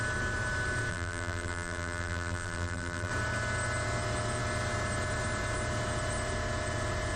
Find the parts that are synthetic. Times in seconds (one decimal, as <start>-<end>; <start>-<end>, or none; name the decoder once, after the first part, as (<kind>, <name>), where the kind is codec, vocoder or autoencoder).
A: 0.9-3.1 (vocoder, BigVGAN v2)